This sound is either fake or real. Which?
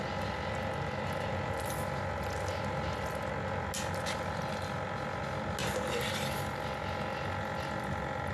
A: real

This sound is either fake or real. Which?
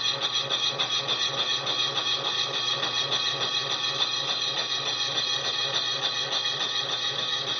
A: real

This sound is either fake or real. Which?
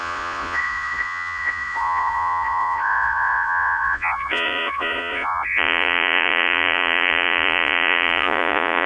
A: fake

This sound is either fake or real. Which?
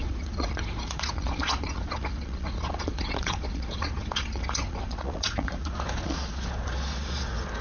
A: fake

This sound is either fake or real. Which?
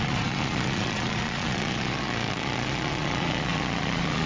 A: fake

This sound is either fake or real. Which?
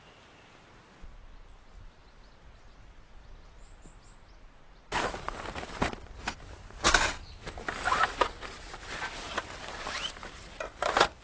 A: real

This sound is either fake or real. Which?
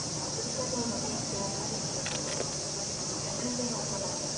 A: real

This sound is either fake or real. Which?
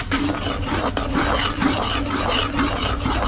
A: real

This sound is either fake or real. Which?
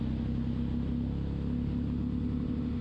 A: real